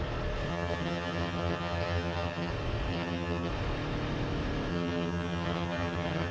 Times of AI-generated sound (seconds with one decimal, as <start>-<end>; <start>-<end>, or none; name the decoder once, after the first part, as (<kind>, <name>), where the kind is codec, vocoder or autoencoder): 0.5-2.5 (vocoder, HiFi-GAN); 2.9-3.5; 4.7-6.3